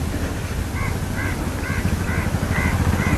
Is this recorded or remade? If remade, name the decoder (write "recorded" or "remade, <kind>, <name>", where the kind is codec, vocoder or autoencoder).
recorded